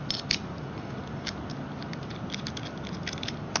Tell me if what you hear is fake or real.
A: real